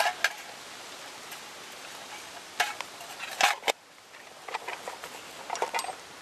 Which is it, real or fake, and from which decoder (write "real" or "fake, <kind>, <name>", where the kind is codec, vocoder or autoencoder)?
real